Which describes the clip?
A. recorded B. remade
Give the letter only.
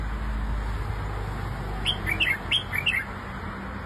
A